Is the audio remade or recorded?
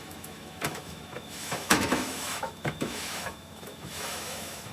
remade